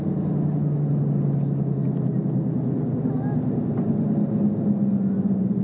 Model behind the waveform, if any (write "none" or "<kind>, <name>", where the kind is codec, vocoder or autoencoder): none